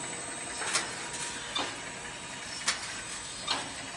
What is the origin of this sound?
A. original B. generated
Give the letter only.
A